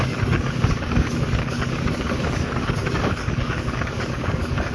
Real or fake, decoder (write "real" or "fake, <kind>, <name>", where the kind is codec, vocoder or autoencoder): fake, codec, DAC